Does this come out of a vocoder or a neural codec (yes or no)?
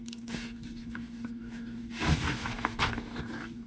yes